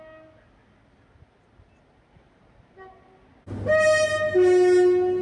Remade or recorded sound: recorded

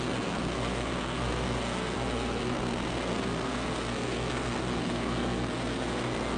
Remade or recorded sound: remade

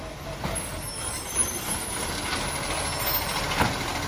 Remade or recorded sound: recorded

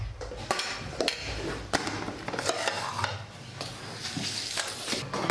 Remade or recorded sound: recorded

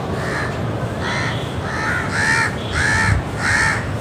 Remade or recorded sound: recorded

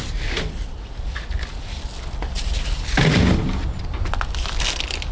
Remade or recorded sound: recorded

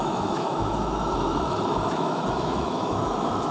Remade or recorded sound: remade